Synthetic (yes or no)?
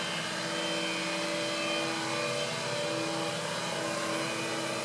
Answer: no